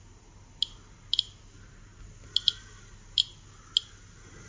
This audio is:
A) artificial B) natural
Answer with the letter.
B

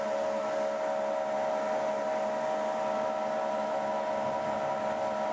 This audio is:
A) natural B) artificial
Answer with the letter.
A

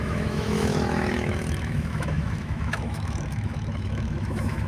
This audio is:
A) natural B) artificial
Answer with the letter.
B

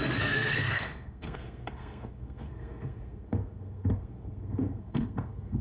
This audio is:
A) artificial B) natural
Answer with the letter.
A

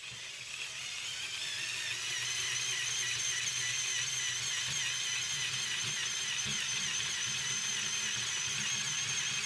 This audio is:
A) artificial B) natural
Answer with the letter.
B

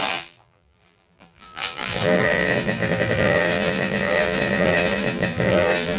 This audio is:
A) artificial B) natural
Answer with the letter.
A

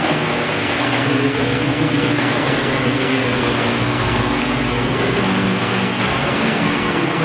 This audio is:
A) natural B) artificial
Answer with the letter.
B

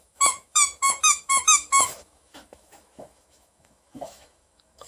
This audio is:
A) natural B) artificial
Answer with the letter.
B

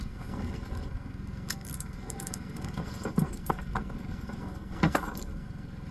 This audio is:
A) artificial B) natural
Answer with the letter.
A